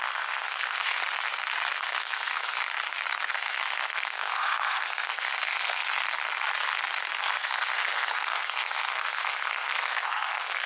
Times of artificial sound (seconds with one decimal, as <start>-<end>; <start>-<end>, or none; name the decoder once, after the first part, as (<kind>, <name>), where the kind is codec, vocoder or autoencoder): 0.0-1.0 (codec, SNAC); 1.7-2.6; 3.3-5.8; 7.2-10.7